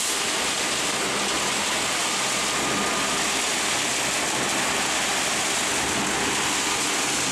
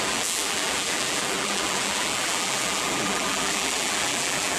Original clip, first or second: first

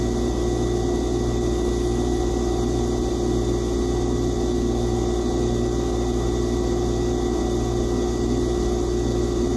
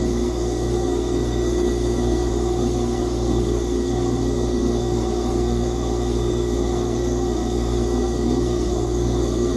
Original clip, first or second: first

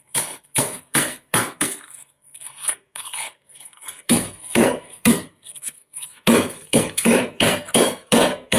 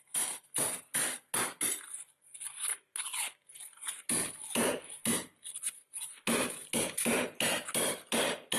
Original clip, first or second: second